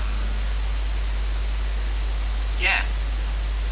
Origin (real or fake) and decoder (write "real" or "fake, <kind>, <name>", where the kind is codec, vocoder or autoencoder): real